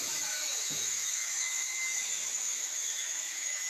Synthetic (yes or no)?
yes